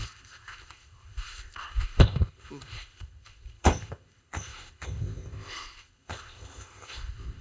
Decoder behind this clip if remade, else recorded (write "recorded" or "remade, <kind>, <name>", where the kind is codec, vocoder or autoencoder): remade, codec, ZipCodec